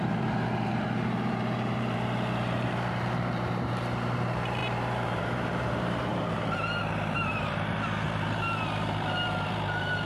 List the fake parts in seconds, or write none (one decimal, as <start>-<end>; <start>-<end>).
0.0-10.1